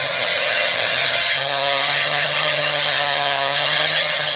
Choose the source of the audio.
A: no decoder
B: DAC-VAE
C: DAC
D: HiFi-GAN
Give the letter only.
D